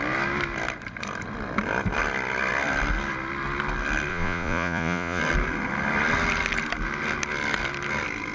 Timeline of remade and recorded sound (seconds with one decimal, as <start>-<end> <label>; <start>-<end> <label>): 0.0-4.1 recorded; 4.1-5.2 remade; 5.2-8.3 recorded